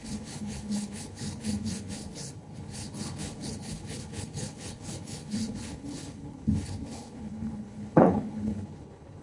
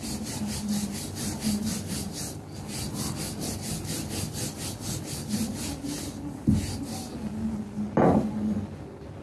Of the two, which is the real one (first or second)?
second